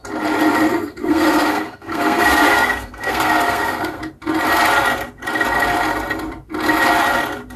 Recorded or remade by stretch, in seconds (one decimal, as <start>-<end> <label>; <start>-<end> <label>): 0.0-0.7 recorded; 0.7-4.0 remade; 4.0-7.6 recorded